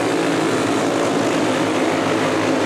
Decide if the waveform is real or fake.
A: real